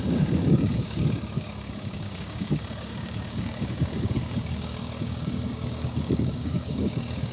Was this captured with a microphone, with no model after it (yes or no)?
no